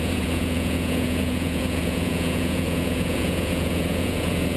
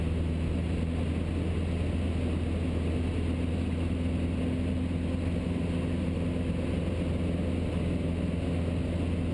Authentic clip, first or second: second